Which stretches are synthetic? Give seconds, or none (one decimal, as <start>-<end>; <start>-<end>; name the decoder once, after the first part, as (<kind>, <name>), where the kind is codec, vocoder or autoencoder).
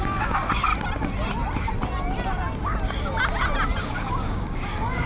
0.0-0.7 (codec, DAC); 3.8-5.1